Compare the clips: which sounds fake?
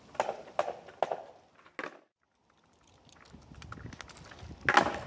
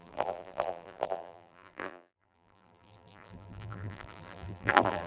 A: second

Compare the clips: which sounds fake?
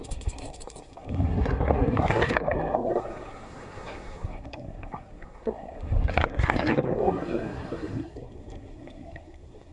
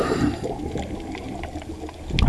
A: first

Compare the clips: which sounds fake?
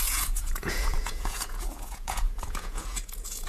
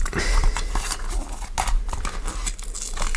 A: first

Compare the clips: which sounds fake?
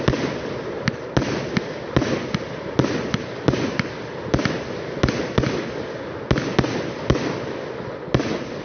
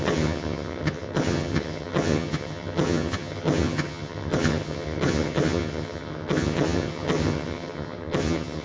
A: second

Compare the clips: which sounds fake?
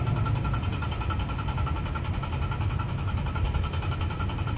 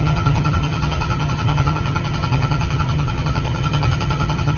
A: second